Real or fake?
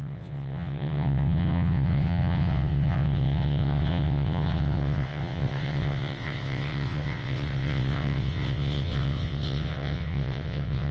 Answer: fake